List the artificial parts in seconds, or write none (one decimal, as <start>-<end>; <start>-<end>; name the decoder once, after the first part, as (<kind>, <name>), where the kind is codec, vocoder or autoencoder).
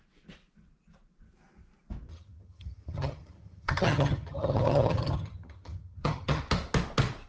2.1-6.4 (vocoder, HiFi-GAN)